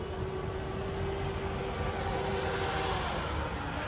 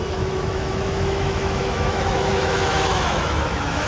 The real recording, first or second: first